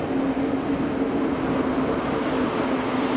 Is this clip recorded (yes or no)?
yes